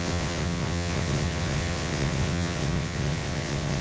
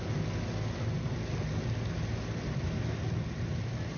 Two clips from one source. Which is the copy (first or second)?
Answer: first